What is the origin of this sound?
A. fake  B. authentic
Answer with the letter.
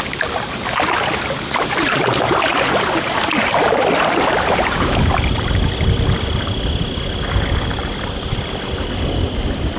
B